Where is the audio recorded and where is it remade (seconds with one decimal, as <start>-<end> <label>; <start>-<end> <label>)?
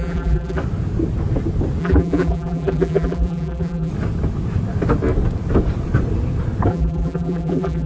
0.0-0.6 remade; 0.6-1.8 recorded; 1.8-3.9 remade; 3.9-6.7 recorded; 6.7-7.9 remade